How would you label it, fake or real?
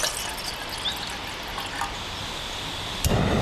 real